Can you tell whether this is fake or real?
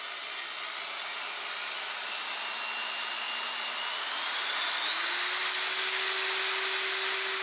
real